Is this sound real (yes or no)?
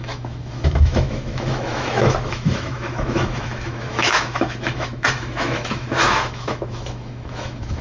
no